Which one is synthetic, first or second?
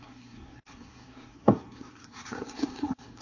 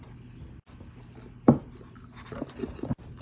first